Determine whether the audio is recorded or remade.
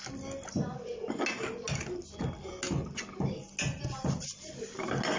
recorded